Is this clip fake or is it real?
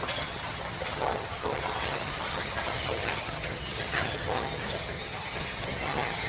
fake